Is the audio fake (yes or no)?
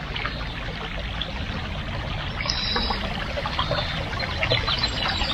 no